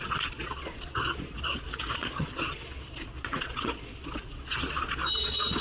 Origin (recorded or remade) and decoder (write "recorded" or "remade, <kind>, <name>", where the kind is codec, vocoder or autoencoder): remade, vocoder, Vocos